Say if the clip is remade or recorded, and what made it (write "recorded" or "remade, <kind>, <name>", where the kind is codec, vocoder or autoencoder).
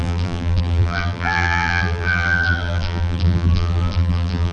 remade, vocoder, BigVGAN v2